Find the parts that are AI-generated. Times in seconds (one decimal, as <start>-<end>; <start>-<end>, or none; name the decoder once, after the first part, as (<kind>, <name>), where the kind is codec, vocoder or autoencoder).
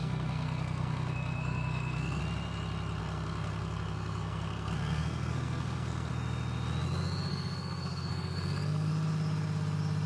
0.0-2.2 (codec, SNAC); 3.0-6.1; 7.3-8.9